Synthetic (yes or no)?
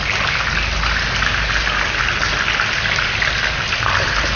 no